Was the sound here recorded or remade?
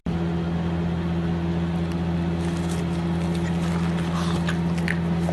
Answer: recorded